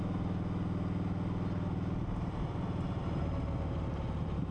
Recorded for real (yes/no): yes